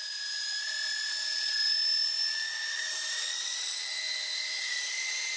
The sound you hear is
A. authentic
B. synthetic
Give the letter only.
A